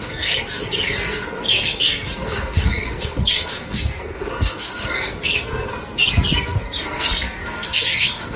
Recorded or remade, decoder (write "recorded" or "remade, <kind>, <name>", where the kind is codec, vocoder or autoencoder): remade, codec, SNAC